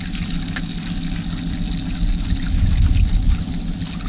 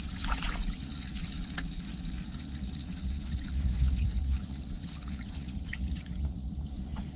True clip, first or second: first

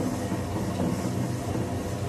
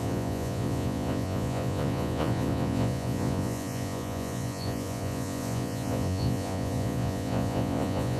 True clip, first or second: first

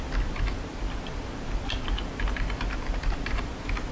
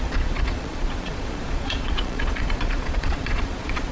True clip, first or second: first